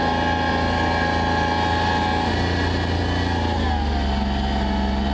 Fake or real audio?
real